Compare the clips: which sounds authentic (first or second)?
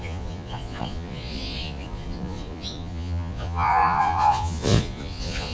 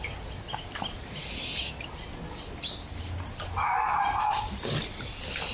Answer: second